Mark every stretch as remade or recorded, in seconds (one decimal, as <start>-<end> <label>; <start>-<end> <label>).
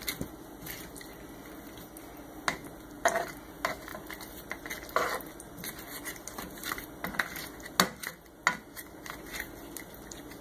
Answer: 0.0-10.4 recorded